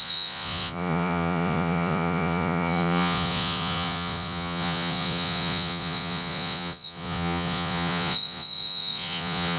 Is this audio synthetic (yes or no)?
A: yes